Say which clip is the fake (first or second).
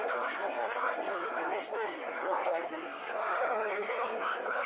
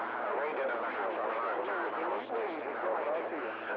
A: first